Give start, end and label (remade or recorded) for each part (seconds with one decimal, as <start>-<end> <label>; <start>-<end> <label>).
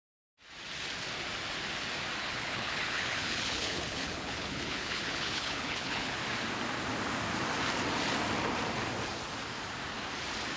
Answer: 0.0-2.2 recorded; 2.2-6.2 remade; 6.2-10.6 recorded